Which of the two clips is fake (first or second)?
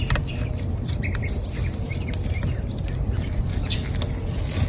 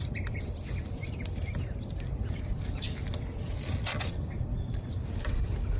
second